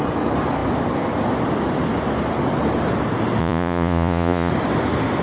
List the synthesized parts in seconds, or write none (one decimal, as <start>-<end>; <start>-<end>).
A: 3.4-4.5